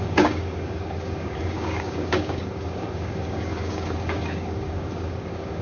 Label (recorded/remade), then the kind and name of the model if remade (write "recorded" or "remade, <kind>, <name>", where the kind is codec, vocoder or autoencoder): remade, codec, DAC